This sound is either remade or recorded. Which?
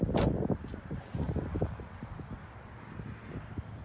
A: recorded